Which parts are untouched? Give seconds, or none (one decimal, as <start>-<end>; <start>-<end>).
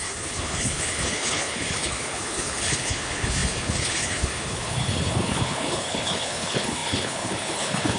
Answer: none